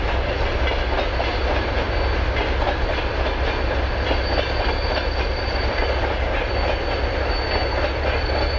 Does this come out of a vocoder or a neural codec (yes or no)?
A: no